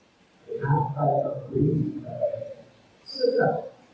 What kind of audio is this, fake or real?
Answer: real